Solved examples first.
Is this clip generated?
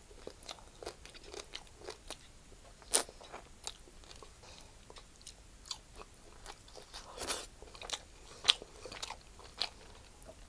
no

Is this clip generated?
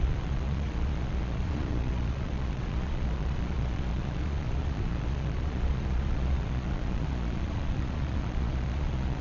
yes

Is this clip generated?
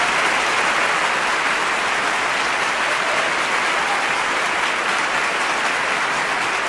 no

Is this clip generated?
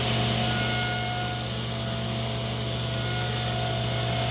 no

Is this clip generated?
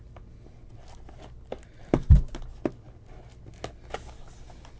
no